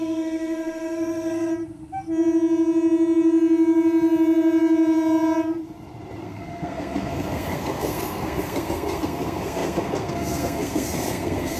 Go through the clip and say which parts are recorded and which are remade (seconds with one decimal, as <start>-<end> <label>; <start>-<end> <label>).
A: 0.0-1.5 remade; 1.5-6.2 recorded; 6.2-11.6 remade